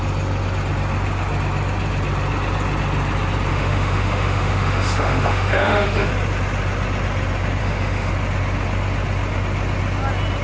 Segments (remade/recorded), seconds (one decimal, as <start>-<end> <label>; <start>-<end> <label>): 0.0-3.5 recorded; 3.5-6.1 remade; 6.1-7.6 recorded; 7.6-8.1 remade; 8.1-10.4 recorded